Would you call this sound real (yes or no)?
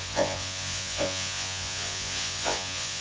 no